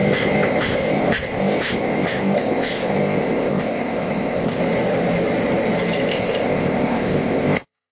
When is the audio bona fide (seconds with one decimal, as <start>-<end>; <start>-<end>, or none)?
4.6-6.1

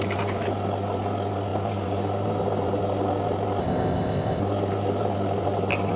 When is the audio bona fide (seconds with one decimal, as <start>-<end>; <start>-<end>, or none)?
0.0-3.6; 4.4-6.0

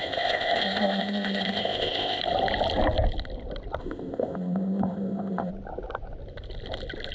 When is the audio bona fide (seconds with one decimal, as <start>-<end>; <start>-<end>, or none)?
2.2-3.8; 5.5-7.1

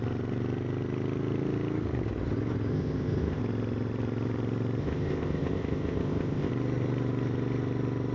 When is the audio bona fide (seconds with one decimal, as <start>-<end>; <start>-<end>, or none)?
0.0-2.7; 3.4-4.8; 6.5-8.1

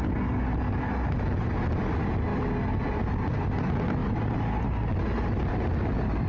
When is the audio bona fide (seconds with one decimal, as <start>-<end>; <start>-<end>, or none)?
0.0-6.3

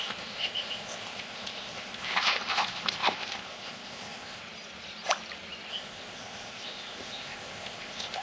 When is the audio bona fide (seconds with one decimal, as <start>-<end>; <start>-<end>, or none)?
4.4-5.7

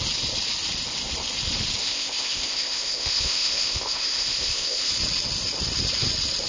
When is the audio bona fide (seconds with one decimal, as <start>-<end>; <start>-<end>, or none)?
0.0-1.8; 4.9-6.5